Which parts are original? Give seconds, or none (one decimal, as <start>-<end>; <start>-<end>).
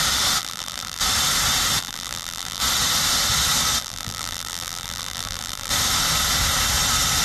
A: 0.0-0.4; 1.0-1.8; 2.6-3.8; 5.7-7.2